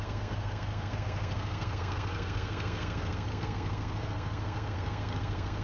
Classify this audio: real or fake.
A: fake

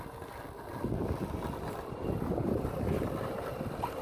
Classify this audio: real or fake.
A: real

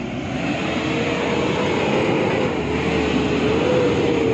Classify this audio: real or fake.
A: real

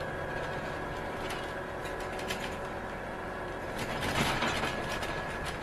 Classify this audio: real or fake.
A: real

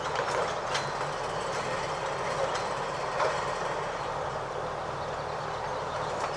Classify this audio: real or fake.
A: real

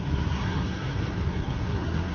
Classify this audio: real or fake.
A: fake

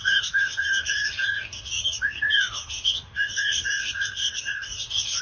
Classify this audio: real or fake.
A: fake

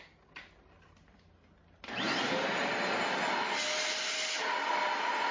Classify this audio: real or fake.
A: real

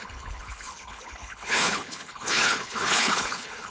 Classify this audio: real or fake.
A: fake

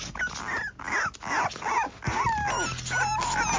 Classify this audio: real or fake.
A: real